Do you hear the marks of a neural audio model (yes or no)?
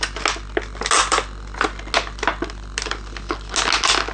no